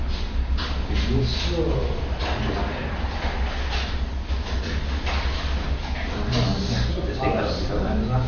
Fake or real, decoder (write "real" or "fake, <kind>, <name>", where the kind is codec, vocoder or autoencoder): real